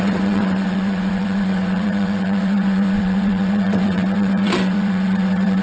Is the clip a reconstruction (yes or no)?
yes